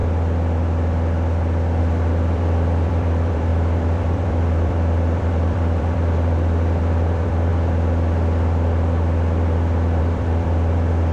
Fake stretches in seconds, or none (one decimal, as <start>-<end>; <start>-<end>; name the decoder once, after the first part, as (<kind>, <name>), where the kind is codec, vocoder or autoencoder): 1.8-7.5 (vocoder, BigVGAN v2); 10.0-11.1